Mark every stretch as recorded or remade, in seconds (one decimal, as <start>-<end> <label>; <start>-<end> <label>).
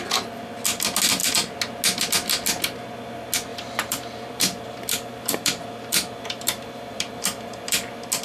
0.0-3.5 recorded; 3.5-7.5 remade; 7.5-8.2 recorded